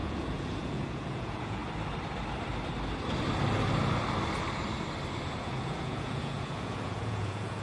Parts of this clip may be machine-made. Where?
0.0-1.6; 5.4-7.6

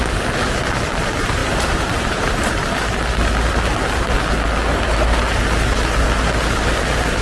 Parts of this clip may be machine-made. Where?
1.4-2.5

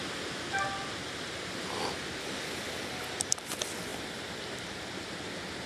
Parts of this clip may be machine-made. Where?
3.0-3.9; 4.5-5.7

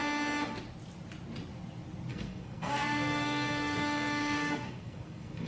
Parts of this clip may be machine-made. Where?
2.1-5.5

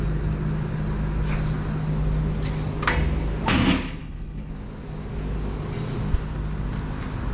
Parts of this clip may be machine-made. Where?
4.0-4.5

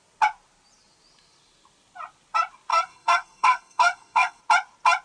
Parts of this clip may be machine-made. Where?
2.7-4.4